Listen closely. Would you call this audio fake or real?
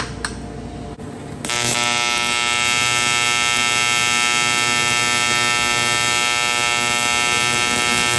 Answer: real